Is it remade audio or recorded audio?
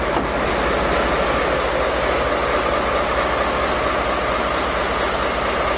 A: recorded